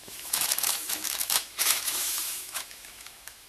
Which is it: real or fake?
fake